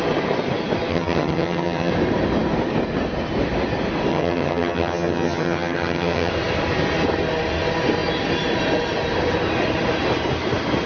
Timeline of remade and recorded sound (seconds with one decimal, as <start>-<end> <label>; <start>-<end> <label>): 0.0-0.9 recorded; 0.9-1.9 remade; 1.9-4.1 recorded; 4.1-6.3 remade; 6.3-10.9 recorded